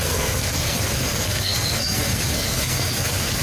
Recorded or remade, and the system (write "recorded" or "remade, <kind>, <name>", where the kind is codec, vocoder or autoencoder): remade, codec, SNAC